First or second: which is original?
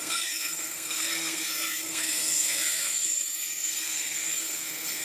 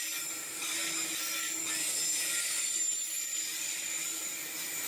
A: second